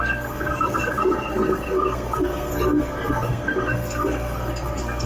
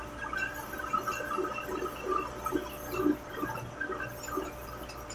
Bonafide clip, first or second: second